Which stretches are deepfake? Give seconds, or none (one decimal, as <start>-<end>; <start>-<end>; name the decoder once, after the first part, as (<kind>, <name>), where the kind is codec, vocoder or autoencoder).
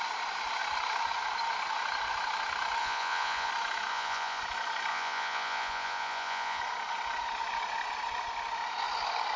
2.8-3.5 (vocoder, Vocos); 3.9-4.4; 4.9-6.6